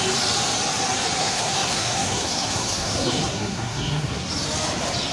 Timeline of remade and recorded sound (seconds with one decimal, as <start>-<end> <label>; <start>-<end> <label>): 0.0-1.2 recorded; 1.2-4.3 remade; 4.3-5.1 recorded